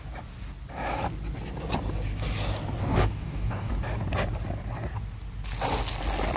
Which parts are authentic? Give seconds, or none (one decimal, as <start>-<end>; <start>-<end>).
0.0-2.8; 3.7-6.4